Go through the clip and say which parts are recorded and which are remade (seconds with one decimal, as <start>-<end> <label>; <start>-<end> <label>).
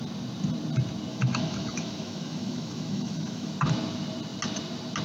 0.0-1.1 recorded; 1.1-3.5 remade; 3.5-5.0 recorded